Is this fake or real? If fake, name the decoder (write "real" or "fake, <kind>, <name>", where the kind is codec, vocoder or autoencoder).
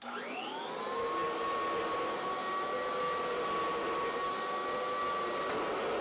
real